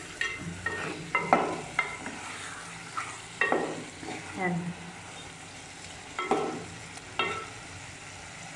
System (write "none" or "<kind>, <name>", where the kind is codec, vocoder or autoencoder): none